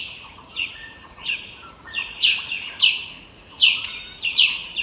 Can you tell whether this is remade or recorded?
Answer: remade